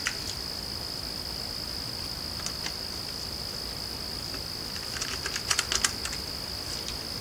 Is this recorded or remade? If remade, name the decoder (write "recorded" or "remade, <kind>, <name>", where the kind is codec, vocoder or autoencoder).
recorded